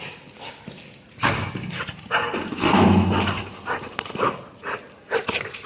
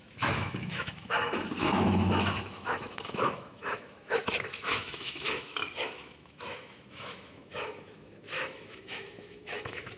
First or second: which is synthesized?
second